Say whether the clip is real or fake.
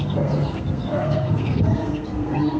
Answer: fake